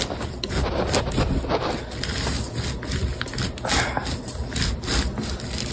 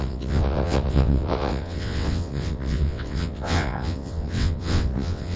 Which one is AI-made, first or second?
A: second